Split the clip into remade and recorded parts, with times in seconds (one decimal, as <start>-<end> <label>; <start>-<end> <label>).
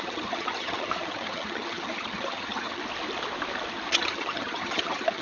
0.0-2.8 remade; 2.8-3.9 recorded; 3.9-5.2 remade